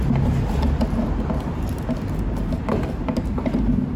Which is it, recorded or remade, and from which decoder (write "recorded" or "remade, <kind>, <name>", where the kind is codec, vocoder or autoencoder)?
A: recorded